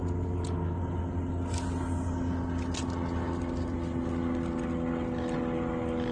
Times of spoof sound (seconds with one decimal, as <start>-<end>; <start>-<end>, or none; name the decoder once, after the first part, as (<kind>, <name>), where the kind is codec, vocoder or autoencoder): none